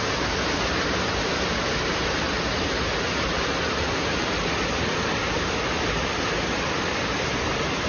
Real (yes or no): yes